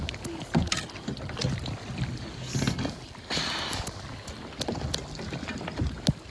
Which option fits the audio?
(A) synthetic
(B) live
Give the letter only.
B